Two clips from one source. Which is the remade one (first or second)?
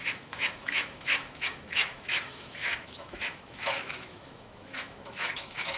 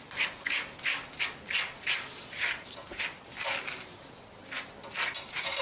first